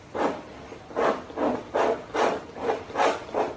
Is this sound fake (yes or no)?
no